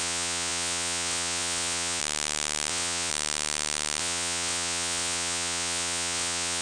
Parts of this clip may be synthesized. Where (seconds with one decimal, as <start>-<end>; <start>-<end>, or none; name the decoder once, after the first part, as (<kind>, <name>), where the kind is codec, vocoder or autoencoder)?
0.0-2.0 (vocoder, WaveNeXt); 2.7-3.1; 4.0-6.6

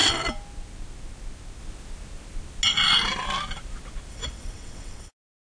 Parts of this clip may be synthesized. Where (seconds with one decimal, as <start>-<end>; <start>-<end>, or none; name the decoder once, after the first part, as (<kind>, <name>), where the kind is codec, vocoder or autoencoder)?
4.1-5.1 (vocoder, WaveNeXt)

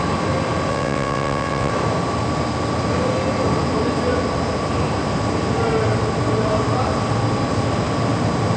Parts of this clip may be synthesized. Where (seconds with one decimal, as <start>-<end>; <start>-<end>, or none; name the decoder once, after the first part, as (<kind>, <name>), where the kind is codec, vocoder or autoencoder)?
0.7-1.7 (vocoder, WaveNeXt)

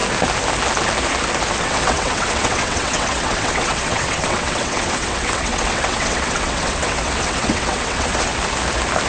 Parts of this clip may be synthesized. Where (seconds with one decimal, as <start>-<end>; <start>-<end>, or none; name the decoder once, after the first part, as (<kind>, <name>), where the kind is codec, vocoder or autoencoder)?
1.6-8.3 (vocoder, WaveNeXt)

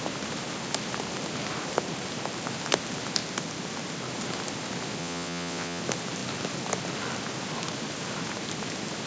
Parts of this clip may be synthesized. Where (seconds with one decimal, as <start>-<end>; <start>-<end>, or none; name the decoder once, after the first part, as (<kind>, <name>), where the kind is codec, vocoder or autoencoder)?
5.0-5.8 (vocoder, WaveNeXt)

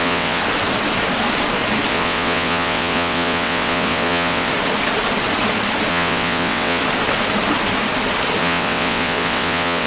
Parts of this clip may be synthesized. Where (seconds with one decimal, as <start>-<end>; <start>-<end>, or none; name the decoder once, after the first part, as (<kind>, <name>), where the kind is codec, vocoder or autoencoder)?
0.0-0.4 (vocoder, WaveNeXt); 1.9-4.5; 5.9-6.8; 8.4-9.9